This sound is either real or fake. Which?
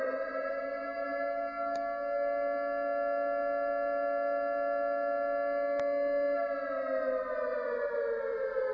real